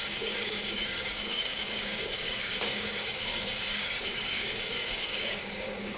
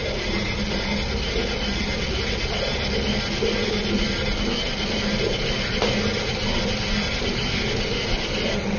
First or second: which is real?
second